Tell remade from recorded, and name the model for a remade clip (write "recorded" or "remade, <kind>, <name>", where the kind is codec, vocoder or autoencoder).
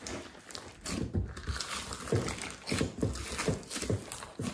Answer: recorded